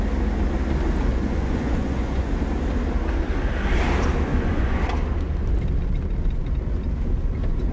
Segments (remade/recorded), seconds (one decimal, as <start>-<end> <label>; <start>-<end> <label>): 0.0-1.1 recorded; 1.1-2.3 remade; 2.3-4.3 recorded; 4.3-4.8 remade; 4.8-7.7 recorded